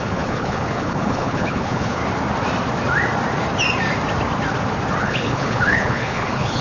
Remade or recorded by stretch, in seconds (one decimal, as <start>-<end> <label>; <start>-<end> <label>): 0.0-2.0 remade; 2.0-5.0 recorded; 5.0-6.6 remade